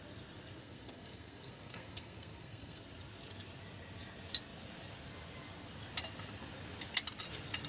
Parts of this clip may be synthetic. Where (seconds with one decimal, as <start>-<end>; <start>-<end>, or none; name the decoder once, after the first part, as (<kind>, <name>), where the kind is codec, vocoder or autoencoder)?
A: 0.6-2.8 (codec, SNAC)